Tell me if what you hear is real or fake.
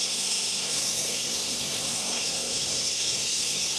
fake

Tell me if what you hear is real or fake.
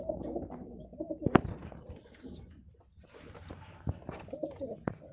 real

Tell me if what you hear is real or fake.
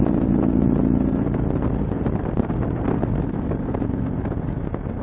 real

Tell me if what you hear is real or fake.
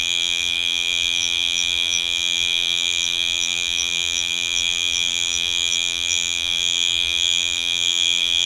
fake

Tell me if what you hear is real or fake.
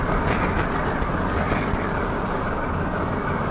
real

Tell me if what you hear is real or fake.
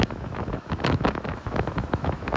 fake